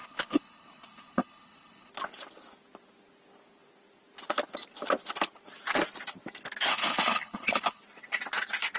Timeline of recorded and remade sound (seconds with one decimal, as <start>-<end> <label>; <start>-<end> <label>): 0.0-1.9 remade; 1.9-6.7 recorded; 6.7-7.8 remade; 7.8-8.8 recorded